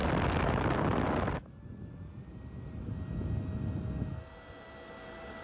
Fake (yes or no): no